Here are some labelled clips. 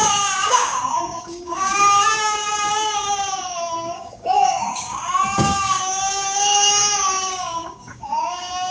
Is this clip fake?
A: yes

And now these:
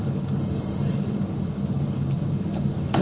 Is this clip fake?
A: yes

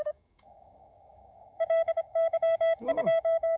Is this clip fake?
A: yes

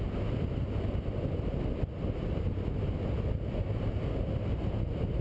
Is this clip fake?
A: no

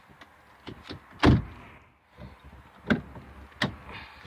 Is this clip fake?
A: no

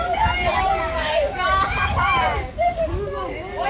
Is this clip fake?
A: yes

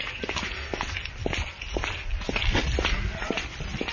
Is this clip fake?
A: no